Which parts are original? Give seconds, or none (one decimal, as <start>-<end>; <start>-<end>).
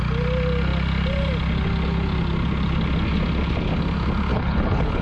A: 0.0-4.3